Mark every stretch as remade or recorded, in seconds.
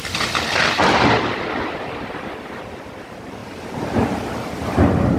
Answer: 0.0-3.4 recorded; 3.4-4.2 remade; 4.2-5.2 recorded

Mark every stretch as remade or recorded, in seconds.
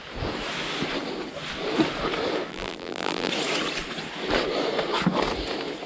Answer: 0.0-2.5 recorded; 2.5-3.3 remade; 3.3-5.9 recorded